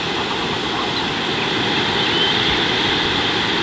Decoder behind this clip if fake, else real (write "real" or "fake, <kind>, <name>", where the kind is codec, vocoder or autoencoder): real